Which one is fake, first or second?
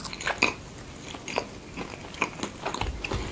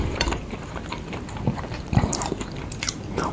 second